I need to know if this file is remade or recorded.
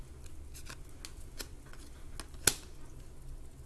recorded